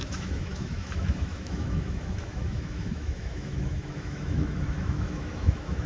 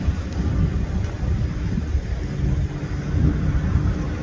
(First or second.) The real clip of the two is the second